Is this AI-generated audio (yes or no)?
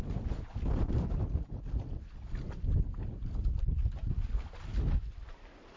no